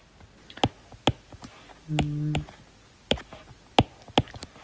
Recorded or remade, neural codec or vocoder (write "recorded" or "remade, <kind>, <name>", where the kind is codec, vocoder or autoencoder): recorded